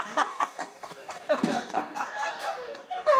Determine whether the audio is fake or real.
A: fake